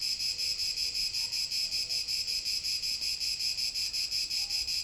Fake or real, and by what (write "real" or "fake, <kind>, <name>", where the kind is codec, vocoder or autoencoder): real